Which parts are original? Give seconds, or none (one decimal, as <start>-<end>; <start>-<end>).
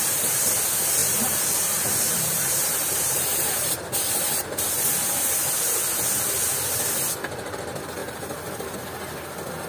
0.0-1.0; 4.6-8.0; 8.7-9.7